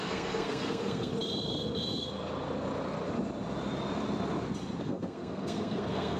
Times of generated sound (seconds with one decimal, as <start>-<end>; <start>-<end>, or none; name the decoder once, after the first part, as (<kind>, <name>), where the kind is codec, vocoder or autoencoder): 0.0-1.1 (codec, SNAC); 4.8-6.2